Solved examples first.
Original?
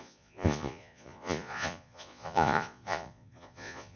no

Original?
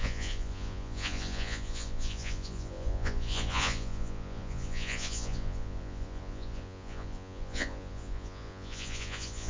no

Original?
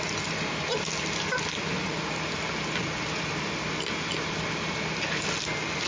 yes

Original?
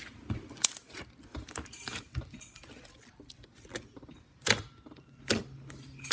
yes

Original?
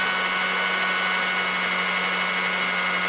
yes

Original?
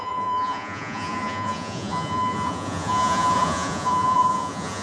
no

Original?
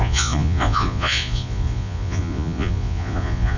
no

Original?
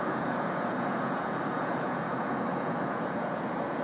no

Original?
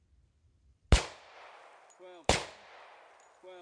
yes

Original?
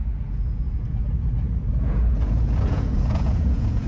no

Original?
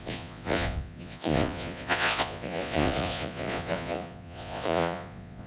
no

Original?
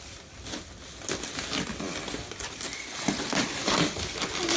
yes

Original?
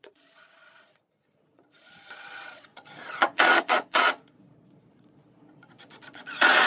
no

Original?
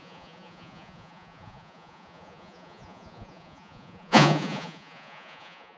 no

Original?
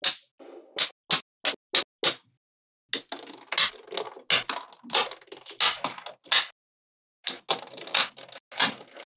yes